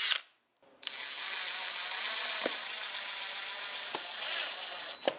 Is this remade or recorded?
recorded